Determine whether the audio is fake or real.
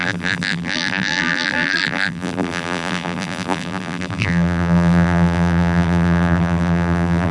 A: fake